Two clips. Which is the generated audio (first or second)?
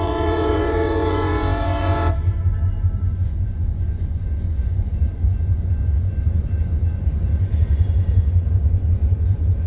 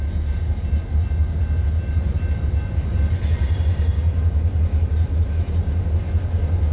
first